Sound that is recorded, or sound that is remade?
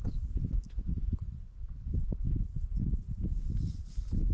recorded